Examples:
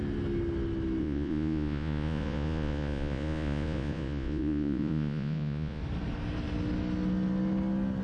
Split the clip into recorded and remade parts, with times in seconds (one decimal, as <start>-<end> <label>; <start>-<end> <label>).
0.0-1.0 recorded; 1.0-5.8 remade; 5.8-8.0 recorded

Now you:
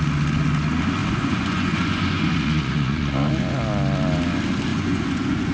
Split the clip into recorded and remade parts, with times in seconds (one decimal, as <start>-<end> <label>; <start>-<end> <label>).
0.0-1.0 recorded; 1.0-3.3 remade; 3.3-4.7 recorded; 4.7-5.5 remade

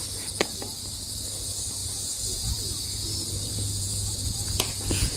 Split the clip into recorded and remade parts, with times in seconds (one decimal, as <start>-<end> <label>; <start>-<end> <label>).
0.0-1.8 recorded; 1.8-5.2 remade